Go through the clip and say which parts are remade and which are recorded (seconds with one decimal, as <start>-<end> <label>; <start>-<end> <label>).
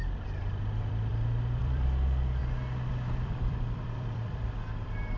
0.0-1.1 remade; 1.1-1.6 recorded; 1.6-2.4 remade; 2.4-2.9 recorded; 2.9-5.2 remade